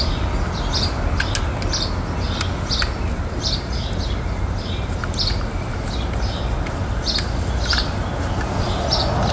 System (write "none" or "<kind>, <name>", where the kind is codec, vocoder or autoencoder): none